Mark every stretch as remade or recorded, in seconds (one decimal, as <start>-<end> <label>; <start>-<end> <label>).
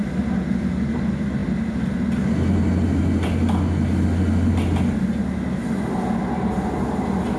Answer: 0.0-7.4 recorded